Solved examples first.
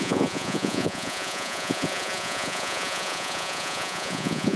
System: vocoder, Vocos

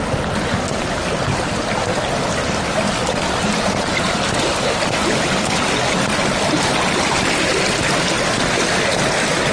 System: none